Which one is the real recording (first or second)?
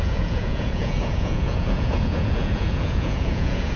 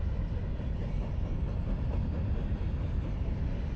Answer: second